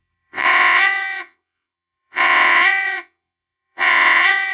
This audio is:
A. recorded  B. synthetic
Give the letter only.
B